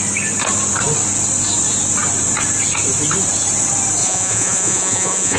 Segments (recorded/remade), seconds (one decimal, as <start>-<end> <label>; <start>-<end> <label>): 0.0-4.0 recorded; 4.0-5.4 remade